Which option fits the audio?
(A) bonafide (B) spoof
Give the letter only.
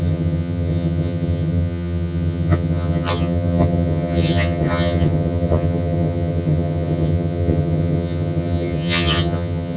B